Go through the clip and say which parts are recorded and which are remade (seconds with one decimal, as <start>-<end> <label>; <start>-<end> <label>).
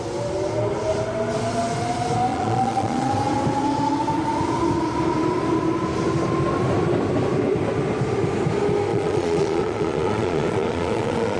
0.0-2.3 recorded; 2.3-3.1 remade; 3.1-8.9 recorded; 8.9-11.4 remade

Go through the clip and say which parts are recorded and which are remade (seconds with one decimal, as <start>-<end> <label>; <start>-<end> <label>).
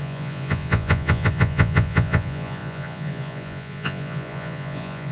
0.0-5.1 remade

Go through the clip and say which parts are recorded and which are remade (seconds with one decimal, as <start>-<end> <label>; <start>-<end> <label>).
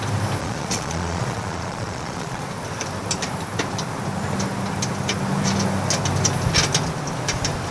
0.0-0.4 recorded; 0.4-2.4 remade; 2.4-7.7 recorded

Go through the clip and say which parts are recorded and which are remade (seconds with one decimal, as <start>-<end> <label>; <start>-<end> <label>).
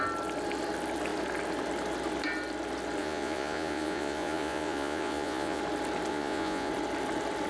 0.0-3.0 recorded; 3.0-5.6 remade; 5.6-6.1 recorded; 6.1-6.7 remade; 6.7-7.5 recorded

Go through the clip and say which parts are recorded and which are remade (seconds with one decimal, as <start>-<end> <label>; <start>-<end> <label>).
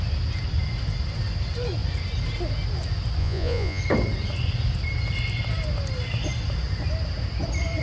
0.0-3.2 recorded; 3.2-3.8 remade; 3.8-7.8 recorded